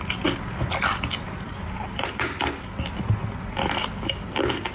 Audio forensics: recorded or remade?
recorded